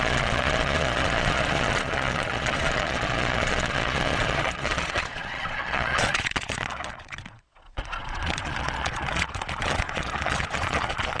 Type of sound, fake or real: fake